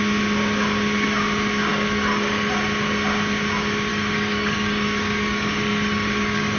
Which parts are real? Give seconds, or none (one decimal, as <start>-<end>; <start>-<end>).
0.0-1.7; 2.5-3.9

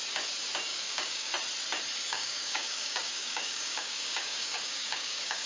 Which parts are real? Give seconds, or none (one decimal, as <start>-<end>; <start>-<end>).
0.0-0.7; 1.3-2.1

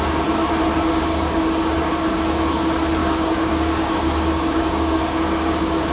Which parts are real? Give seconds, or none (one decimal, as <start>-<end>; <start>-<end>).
0.0-1.1; 2.4-3.0

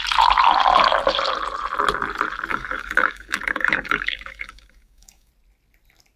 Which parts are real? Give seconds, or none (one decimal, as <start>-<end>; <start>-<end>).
0.0-2.5; 5.3-6.2

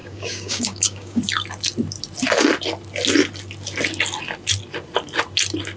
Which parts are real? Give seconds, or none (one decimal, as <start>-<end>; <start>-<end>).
1.2-5.8

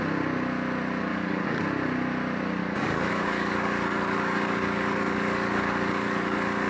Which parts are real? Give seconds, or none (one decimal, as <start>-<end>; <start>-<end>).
0.0-1.1; 1.6-2.6

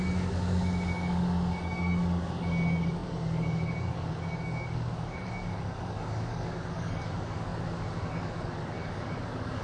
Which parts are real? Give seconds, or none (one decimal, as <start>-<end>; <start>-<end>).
none

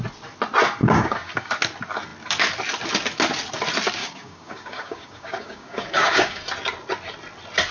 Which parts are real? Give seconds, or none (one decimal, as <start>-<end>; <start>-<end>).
0.0-0.8; 1.5-4.0; 6.4-7.7